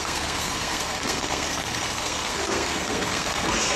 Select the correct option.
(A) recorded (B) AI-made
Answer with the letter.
B